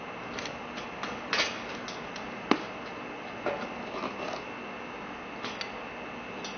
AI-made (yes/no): no